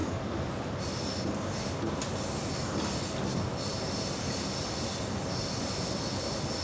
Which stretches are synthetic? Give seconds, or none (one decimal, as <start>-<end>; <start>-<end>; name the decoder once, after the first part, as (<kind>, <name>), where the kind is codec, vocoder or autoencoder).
none